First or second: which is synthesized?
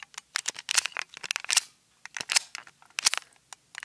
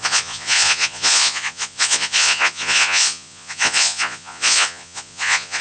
second